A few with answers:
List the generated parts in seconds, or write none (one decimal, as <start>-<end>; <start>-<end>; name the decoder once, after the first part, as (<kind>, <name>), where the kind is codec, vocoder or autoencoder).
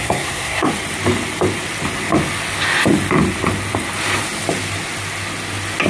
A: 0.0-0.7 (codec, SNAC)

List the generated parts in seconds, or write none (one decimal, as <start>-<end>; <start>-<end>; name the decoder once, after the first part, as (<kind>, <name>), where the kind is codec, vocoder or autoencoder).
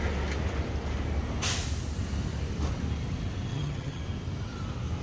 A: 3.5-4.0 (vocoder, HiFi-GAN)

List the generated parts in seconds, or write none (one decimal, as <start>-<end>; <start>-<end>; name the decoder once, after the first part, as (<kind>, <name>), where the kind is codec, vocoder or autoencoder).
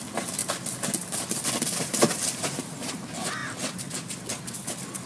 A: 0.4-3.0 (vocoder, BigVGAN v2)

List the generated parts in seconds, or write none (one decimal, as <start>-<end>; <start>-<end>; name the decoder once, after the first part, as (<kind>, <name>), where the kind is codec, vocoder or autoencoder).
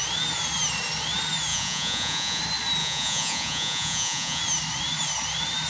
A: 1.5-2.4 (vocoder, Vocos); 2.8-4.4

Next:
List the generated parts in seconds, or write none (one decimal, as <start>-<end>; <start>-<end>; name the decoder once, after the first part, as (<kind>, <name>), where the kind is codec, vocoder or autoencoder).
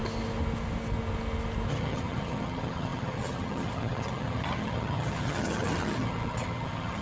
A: 1.7-7.0 (vocoder, HiFi-GAN)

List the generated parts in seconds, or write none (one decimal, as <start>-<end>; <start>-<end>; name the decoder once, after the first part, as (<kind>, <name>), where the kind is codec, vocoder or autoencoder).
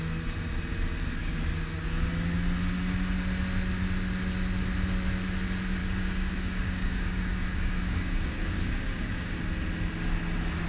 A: 1.2-2.1 (codec, DAC); 5.8-9.4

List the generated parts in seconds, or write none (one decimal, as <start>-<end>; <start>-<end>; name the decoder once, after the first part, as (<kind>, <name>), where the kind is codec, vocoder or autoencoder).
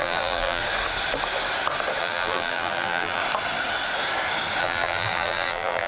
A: 0.0-0.6 (vocoder, BigVGAN v2); 2.0-3.2; 4.6-5.9